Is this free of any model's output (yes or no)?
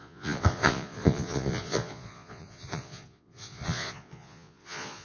no